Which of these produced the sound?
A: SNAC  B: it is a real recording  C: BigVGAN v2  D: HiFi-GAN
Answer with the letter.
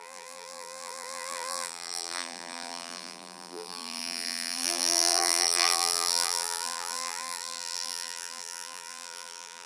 C